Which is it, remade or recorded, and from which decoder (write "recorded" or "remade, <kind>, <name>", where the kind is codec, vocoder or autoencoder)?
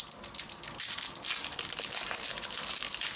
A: recorded